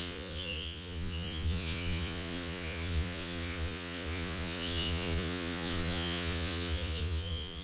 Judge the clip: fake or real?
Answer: fake